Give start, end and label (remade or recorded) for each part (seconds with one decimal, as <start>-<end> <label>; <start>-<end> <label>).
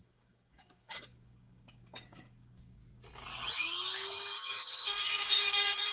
0.0-2.8 remade; 2.8-3.6 recorded; 3.6-5.9 remade